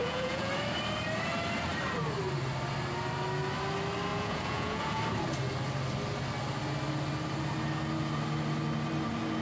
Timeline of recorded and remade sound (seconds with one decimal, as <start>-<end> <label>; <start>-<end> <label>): 0.0-0.5 remade; 0.5-4.1 recorded; 4.1-5.0 remade; 5.0-9.4 recorded